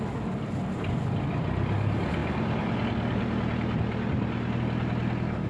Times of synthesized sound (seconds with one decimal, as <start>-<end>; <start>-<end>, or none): none